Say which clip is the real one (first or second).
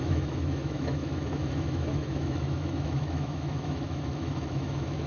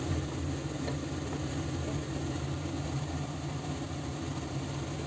second